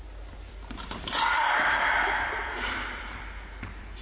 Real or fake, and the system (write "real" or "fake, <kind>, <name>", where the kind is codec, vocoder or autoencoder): fake, vocoder, BigVGAN v2